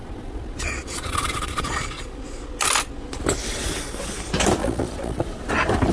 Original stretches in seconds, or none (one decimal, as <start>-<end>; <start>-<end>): 2.2-4.6; 5.5-5.9